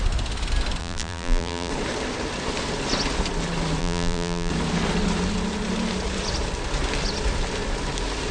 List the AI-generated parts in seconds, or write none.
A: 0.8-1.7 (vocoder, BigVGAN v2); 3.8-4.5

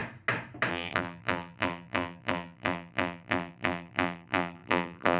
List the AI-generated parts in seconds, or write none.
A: 0.7-5.2 (vocoder, BigVGAN v2)